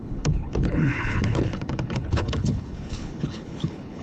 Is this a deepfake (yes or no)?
yes